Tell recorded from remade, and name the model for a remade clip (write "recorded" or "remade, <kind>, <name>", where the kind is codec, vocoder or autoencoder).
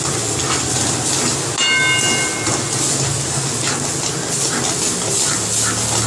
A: recorded